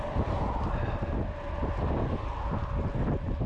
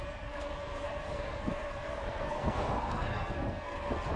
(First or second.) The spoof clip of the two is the second